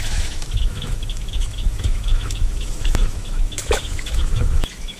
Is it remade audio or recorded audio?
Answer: remade